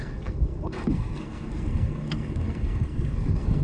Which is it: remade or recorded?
remade